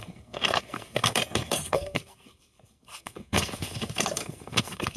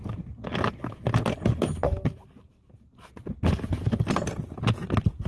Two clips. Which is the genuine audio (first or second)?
second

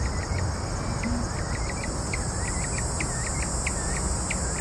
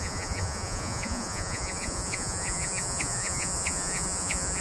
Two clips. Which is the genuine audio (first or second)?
first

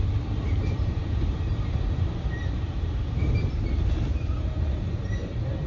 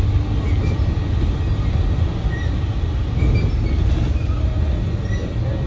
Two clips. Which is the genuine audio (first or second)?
second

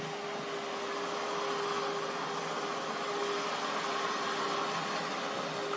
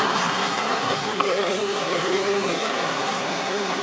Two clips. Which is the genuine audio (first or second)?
first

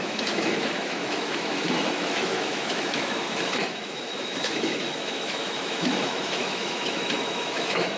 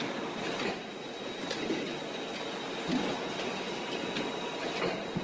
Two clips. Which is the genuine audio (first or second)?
second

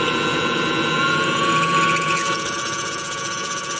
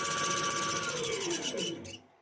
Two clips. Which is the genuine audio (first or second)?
second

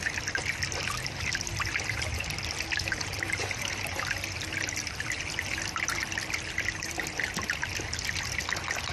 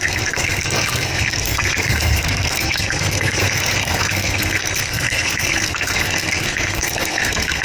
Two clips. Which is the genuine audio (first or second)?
first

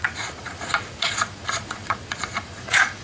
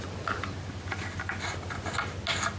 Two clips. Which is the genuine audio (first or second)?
second